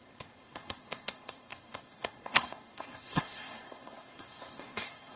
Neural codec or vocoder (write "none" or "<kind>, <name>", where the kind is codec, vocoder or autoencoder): codec, SNAC